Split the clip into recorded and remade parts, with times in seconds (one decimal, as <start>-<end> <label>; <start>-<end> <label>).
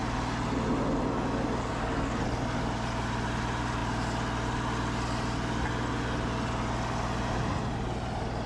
0.0-8.5 recorded